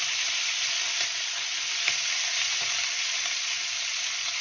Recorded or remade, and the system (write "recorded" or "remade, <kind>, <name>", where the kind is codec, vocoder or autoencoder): recorded